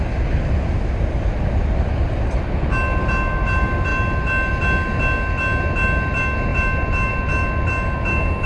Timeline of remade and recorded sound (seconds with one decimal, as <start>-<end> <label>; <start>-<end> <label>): 0.0-8.5 recorded